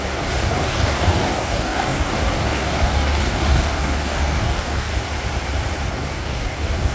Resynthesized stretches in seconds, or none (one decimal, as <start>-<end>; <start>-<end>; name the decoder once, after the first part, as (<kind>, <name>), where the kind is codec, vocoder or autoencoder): 0.0-4.9 (codec, DAC); 5.9-6.9

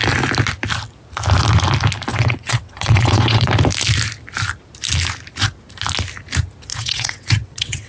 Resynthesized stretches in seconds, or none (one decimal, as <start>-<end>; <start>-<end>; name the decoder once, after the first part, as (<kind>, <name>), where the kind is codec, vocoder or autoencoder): 2.1-3.5 (vocoder, WaveNeXt); 6.7-7.9

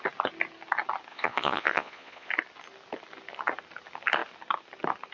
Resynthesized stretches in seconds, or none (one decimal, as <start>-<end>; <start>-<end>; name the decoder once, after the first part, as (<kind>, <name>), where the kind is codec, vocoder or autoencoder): 1.1-2.3 (vocoder, Vocos)